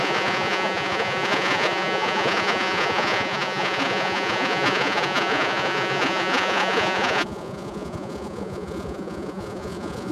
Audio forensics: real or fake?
fake